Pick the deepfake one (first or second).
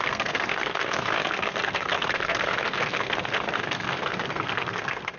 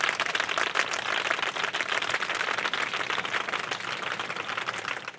first